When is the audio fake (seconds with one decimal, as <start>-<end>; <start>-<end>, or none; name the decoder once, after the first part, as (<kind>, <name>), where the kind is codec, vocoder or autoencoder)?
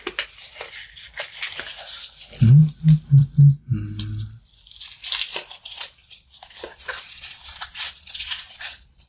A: 5.6-9.1 (vocoder, Vocos)